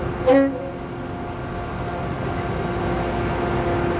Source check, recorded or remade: recorded